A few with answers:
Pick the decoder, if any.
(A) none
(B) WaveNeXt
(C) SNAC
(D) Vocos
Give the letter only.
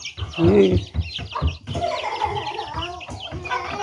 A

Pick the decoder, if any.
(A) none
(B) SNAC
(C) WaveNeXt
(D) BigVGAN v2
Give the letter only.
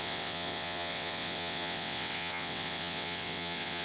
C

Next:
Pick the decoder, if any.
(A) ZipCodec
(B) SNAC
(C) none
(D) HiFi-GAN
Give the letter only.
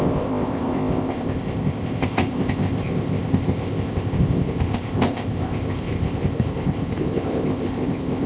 A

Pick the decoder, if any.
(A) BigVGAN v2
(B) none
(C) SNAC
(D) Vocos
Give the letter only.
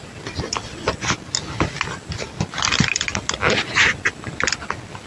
B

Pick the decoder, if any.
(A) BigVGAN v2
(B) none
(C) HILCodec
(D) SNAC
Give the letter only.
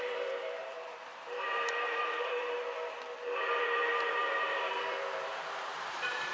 A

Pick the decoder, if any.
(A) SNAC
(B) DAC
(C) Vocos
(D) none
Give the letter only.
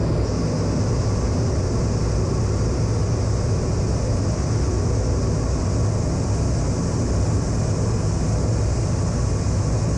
D